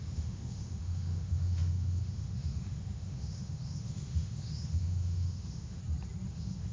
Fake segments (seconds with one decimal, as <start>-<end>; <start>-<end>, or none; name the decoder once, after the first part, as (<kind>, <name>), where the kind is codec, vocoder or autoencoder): 0.0-5.8 (autoencoder, DAC-VAE); 6.3-6.7